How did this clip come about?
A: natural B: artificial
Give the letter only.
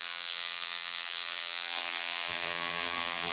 B